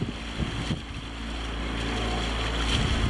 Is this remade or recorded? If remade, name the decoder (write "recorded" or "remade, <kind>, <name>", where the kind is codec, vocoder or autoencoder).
recorded